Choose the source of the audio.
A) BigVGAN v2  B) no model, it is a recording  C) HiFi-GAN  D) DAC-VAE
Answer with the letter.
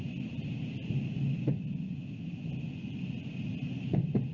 B